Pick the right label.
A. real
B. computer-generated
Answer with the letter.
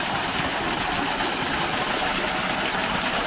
A